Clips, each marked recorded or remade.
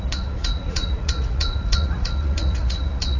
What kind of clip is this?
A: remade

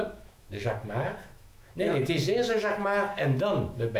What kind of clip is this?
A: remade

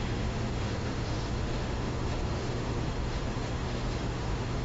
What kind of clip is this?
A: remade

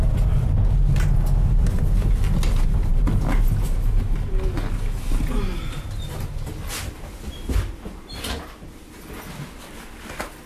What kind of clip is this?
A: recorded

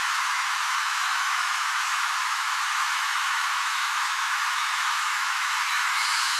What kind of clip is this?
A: remade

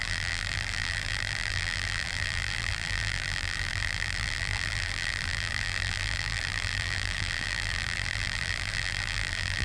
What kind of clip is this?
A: remade